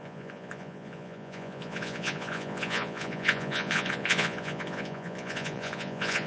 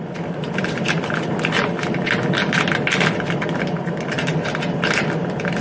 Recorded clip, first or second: second